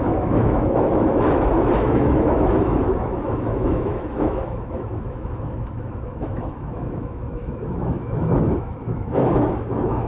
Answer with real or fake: fake